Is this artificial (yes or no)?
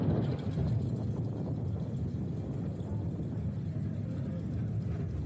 no